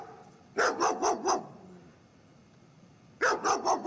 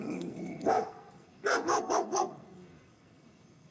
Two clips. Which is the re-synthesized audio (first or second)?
second